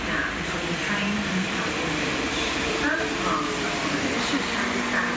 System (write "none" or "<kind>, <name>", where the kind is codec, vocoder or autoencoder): vocoder, BigVGAN v2